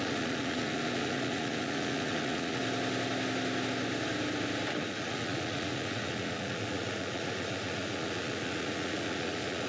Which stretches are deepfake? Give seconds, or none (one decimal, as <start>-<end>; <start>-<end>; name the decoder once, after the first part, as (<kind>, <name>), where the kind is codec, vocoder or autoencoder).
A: 0.0-2.6 (vocoder, Vocos); 4.7-9.7